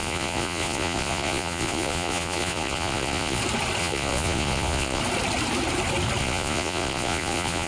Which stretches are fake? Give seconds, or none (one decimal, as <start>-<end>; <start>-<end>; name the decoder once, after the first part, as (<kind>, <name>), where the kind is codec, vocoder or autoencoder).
0.0-3.4 (vocoder, Vocos); 3.8-5.0; 6.2-7.7